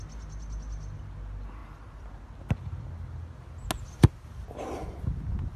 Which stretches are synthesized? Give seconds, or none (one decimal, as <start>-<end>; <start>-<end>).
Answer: none